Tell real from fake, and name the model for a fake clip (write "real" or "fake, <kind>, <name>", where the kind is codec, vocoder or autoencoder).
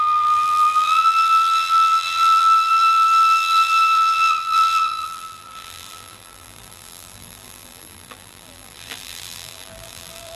fake, vocoder, BigVGAN v2